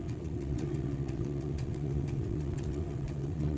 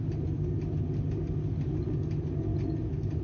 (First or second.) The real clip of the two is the second